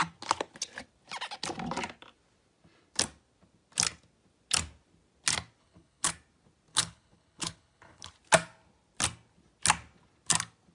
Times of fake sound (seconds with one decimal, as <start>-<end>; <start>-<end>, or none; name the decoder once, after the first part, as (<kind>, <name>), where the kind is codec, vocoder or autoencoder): 5.6-6.1 (codec, HILCodec); 6.7-8.1